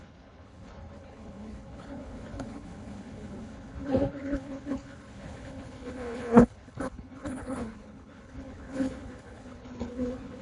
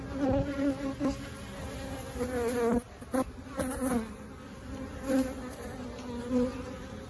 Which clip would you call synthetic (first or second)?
first